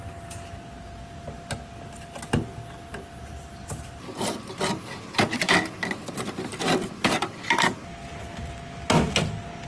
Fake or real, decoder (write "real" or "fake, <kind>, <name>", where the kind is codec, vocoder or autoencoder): real